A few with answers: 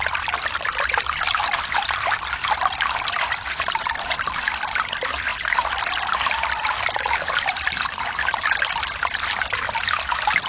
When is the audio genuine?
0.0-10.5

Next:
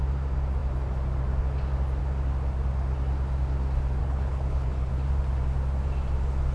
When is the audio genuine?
0.0-4.0; 4.9-6.5